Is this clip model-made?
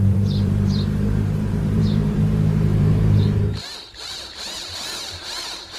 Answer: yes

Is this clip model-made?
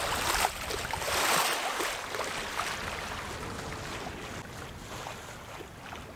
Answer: no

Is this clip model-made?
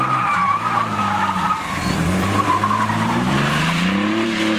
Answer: yes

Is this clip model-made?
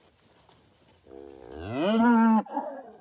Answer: no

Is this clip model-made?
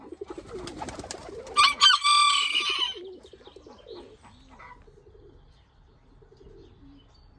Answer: no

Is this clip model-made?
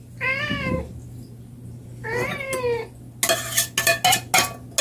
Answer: no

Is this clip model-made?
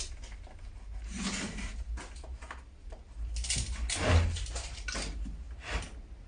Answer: no